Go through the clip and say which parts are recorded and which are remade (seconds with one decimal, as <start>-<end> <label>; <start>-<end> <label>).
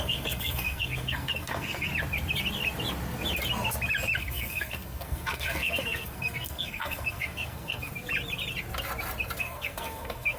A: 0.0-1.9 remade; 1.9-4.2 recorded; 4.2-7.9 remade; 7.9-9.4 recorded; 9.4-10.4 remade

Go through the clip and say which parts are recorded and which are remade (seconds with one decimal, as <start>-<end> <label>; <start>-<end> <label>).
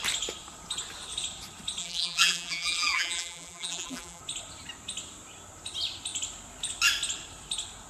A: 0.0-1.8 recorded; 1.8-4.2 remade; 4.2-7.9 recorded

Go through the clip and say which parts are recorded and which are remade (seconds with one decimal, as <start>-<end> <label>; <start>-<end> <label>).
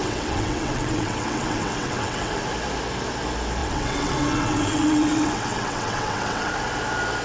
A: 0.0-2.4 remade; 2.4-3.6 recorded; 3.6-6.5 remade; 6.5-7.2 recorded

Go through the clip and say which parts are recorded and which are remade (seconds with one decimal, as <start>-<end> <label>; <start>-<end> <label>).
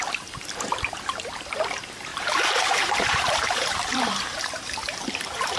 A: 0.0-2.1 recorded; 2.1-5.6 remade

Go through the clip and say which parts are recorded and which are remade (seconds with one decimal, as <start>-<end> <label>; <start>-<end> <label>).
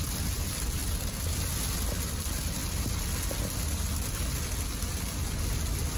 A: 0.0-6.0 recorded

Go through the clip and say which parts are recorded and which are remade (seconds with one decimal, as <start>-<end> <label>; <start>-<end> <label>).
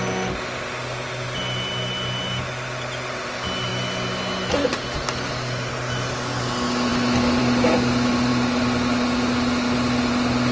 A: 0.0-10.5 recorded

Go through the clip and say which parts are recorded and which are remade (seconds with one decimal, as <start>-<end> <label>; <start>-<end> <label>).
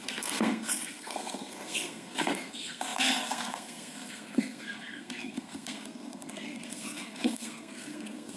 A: 0.0-8.4 remade